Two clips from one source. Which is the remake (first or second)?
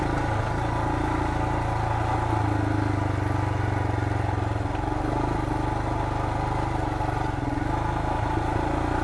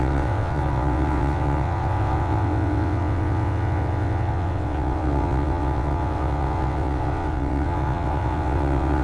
second